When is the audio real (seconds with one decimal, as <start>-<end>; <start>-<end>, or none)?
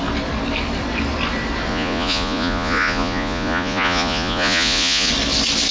0.0-1.7; 5.1-5.7